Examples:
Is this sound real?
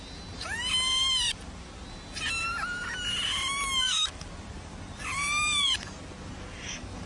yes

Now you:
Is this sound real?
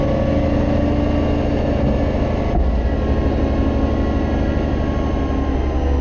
yes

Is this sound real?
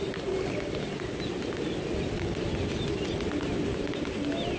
yes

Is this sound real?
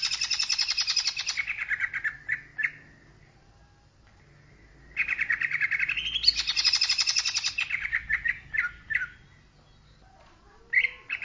yes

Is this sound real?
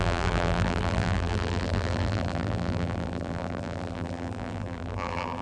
no